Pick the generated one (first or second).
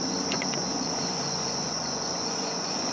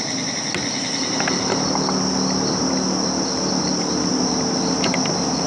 first